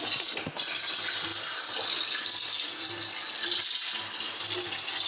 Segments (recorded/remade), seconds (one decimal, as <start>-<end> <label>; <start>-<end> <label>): 0.0-5.1 recorded

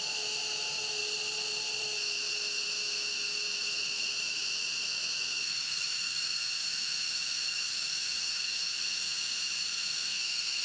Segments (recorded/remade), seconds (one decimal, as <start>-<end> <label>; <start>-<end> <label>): 0.0-1.0 remade; 1.0-1.8 recorded; 1.8-10.6 remade